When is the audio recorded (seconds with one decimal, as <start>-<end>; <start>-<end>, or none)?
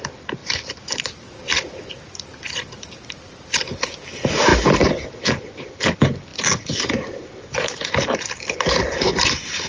0.0-9.7